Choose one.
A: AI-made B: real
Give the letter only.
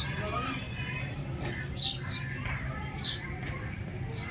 B